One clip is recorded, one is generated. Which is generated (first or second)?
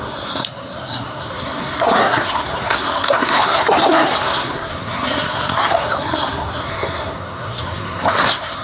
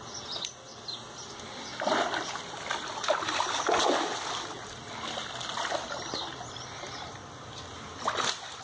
first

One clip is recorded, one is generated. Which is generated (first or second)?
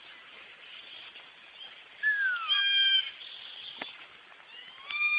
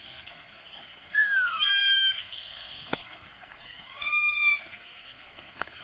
second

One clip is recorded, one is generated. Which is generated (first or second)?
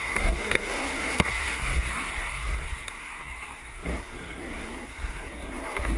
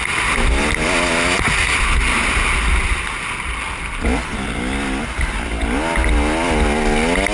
first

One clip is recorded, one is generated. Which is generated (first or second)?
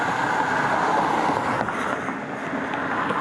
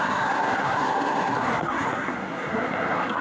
second